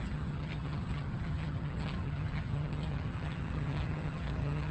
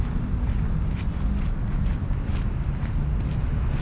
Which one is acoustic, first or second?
second